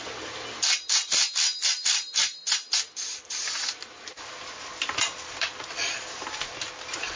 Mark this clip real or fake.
real